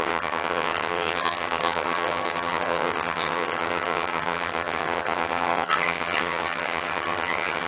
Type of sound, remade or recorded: remade